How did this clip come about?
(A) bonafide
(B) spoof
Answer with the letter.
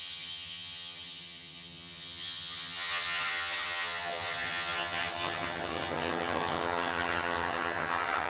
B